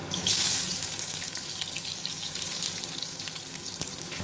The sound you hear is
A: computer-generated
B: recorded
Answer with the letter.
A